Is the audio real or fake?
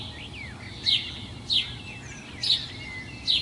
real